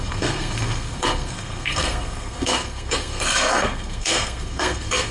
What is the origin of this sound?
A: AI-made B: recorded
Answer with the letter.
A